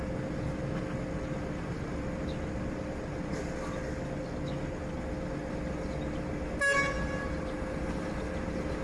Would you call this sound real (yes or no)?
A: yes